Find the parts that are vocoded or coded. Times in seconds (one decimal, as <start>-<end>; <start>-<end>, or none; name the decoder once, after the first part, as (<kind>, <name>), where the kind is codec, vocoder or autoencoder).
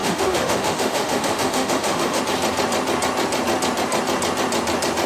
0.0-2.2 (autoencoder, DAC-VAE)